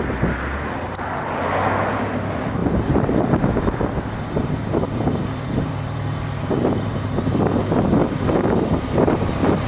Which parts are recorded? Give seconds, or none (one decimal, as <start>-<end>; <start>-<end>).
0.0-2.6; 7.1-8.0